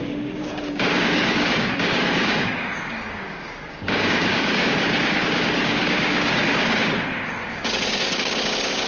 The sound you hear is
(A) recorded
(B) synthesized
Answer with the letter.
B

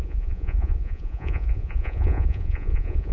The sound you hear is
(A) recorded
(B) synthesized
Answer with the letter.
B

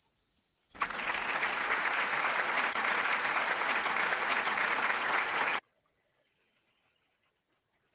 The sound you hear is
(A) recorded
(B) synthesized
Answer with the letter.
B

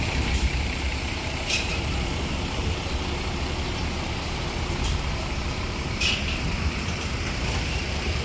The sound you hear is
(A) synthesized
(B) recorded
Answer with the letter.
A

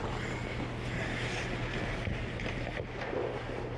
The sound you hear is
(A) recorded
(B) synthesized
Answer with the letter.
A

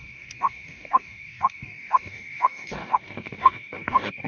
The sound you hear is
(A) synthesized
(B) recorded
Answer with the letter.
A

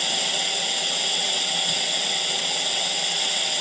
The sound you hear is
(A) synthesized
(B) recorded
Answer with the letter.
A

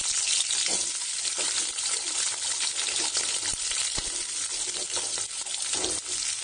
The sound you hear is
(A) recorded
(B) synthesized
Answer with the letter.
A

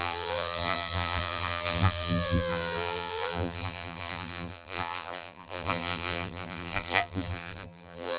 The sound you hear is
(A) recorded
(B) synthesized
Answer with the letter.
B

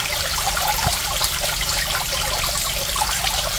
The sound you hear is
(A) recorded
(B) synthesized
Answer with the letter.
A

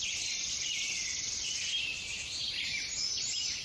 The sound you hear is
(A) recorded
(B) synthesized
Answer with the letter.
B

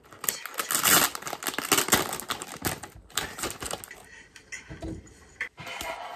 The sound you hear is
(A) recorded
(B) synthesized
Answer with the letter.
A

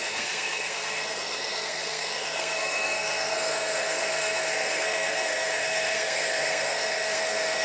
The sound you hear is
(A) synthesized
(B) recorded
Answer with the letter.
A